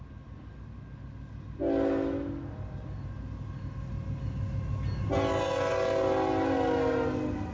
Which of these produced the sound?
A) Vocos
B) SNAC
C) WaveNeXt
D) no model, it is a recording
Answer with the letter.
D